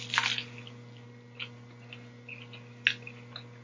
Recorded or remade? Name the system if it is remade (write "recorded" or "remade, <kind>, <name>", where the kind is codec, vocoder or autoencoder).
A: recorded